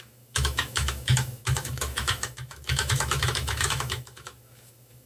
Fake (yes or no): yes